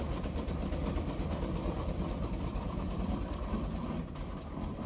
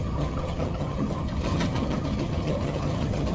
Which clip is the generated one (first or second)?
second